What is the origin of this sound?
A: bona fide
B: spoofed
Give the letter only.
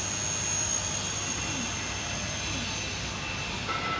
A